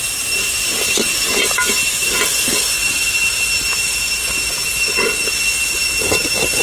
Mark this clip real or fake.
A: real